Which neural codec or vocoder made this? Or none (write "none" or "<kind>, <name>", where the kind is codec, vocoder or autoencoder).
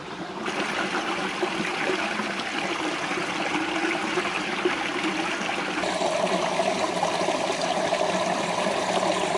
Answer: none